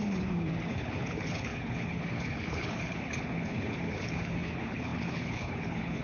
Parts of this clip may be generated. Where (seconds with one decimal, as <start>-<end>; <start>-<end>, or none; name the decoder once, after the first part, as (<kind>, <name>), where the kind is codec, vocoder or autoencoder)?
0.0-6.0 (codec, HILCodec)

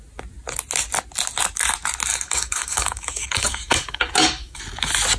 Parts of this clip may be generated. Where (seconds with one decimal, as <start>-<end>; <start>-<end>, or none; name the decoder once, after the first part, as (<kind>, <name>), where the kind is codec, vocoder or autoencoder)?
2.1-4.6 (codec, DAC)

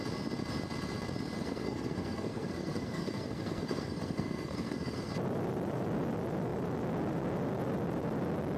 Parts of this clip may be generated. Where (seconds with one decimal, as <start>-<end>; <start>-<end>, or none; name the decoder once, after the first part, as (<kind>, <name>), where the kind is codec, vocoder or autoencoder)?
1.4-5.1 (codec, SNAC)

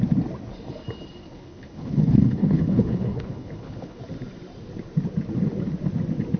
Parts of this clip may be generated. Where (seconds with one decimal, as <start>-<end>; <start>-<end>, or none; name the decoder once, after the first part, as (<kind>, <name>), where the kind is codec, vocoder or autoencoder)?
1.2-4.0 (codec, HILCodec)

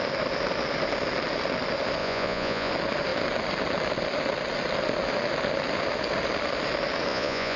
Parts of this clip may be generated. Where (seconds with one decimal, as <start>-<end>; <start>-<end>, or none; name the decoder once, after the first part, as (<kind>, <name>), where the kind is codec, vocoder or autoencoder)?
2.0-2.7 (vocoder, Vocos); 7.1-7.6

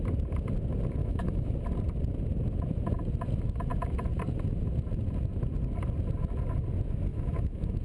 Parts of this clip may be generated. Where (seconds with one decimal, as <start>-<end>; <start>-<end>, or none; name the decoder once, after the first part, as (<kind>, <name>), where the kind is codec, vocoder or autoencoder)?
1.0-1.5 (autoencoder, DAC-VAE); 7.1-7.8